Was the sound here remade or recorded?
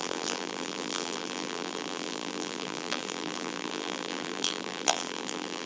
remade